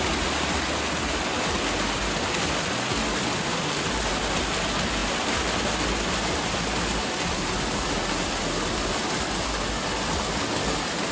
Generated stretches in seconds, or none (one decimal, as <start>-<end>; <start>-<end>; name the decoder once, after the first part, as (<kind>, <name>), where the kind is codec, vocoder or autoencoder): none